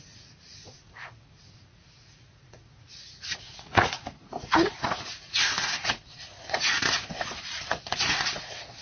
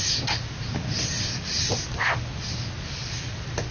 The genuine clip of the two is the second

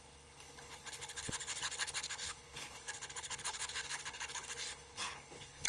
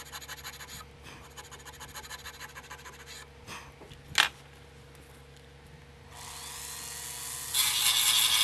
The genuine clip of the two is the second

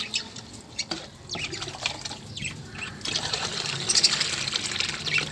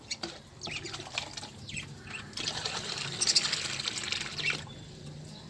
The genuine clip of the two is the second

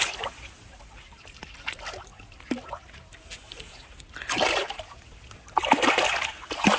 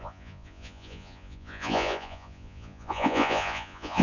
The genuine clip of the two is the first